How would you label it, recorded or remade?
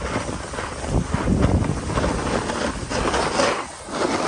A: recorded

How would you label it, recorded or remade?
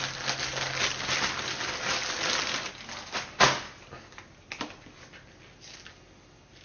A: recorded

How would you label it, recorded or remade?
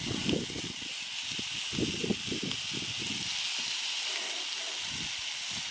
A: recorded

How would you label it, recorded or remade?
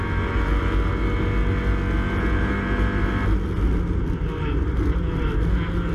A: recorded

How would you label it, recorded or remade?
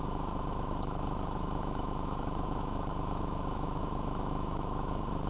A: remade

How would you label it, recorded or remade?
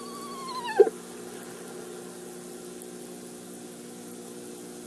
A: recorded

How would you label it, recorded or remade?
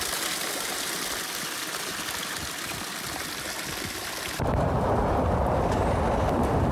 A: recorded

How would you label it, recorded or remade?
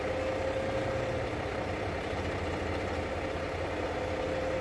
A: recorded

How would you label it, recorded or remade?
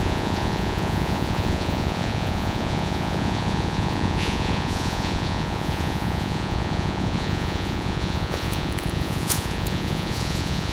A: remade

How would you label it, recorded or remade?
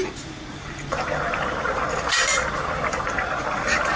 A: remade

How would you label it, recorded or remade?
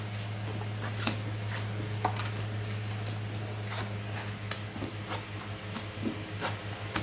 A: recorded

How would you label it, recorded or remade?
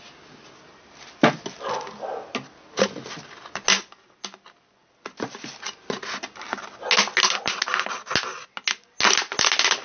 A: recorded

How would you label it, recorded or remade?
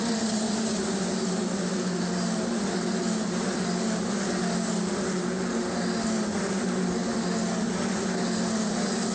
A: recorded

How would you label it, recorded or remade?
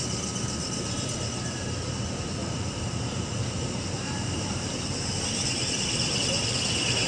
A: remade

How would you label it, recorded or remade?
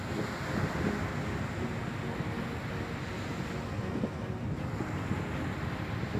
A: recorded